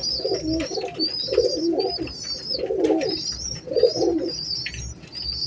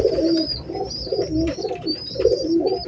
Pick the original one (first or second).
first